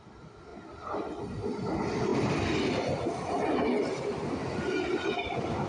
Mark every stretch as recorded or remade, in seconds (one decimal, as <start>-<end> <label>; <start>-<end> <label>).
0.0-5.7 recorded